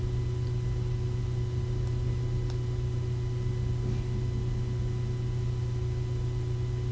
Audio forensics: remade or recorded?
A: recorded